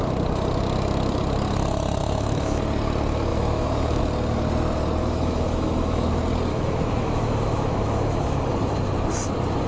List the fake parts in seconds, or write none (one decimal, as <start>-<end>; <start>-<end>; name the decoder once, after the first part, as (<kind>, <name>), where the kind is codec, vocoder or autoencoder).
2.0-2.6 (autoencoder, DAC-VAE); 3.3-4.0; 5.0-6.1; 6.5-8.4